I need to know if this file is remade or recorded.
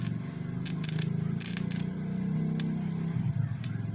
recorded